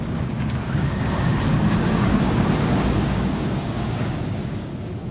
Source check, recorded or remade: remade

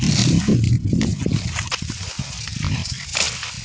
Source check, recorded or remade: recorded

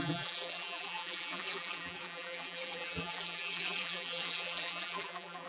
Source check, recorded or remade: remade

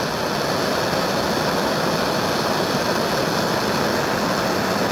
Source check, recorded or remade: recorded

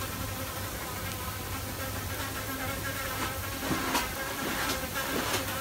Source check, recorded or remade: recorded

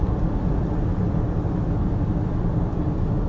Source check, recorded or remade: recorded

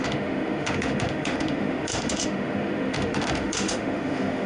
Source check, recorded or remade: remade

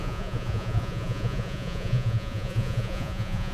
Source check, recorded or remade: remade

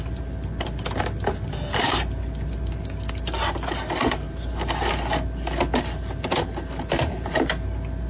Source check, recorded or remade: recorded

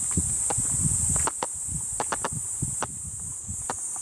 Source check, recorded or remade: remade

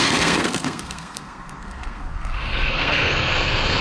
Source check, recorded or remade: remade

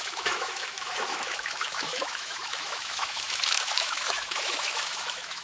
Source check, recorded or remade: remade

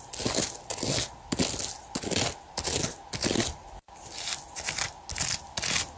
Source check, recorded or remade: recorded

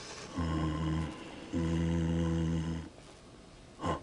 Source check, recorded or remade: recorded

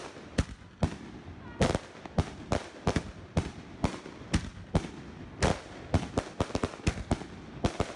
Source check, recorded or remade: recorded